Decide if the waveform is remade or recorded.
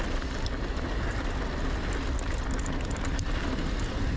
recorded